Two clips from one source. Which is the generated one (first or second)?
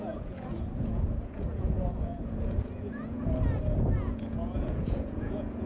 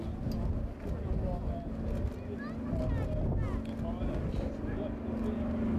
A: first